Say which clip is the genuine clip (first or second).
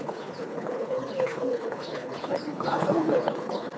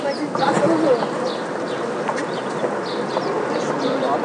second